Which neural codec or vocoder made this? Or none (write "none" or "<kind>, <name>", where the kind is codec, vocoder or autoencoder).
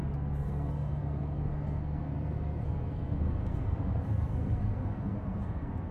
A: codec, SNAC